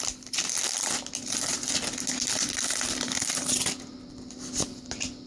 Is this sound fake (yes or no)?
no